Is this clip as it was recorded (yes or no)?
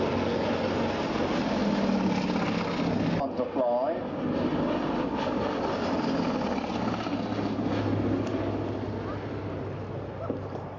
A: yes